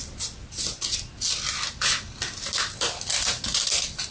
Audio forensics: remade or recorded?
recorded